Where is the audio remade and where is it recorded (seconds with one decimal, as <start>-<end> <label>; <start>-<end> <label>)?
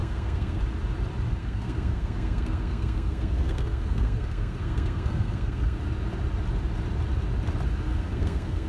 0.0-0.6 remade; 0.6-1.4 recorded; 1.4-5.8 remade; 5.8-7.9 recorded; 7.9-8.7 remade